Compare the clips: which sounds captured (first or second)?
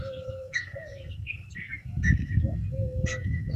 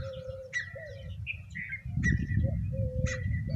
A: second